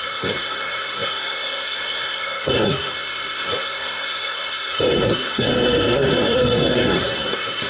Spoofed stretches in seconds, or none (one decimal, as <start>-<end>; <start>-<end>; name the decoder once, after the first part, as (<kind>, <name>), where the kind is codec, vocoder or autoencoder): 0.0-7.7 (codec, SNAC)